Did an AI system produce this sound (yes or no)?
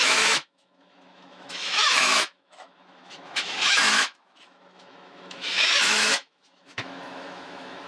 yes